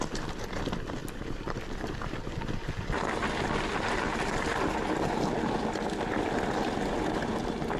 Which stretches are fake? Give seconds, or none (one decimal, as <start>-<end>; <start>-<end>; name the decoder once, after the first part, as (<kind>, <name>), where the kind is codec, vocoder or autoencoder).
none